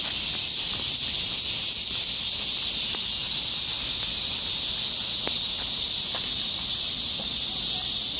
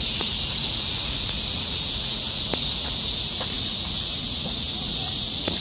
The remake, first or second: second